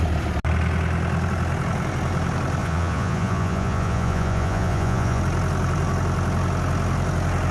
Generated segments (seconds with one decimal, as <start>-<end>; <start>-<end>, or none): 2.6-5.2